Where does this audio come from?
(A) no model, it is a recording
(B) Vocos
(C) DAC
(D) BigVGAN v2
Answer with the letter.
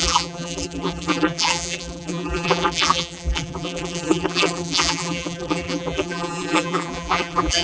D